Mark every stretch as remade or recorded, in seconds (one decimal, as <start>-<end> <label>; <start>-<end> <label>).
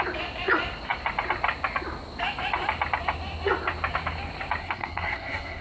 0.0-4.6 recorded; 4.6-5.6 remade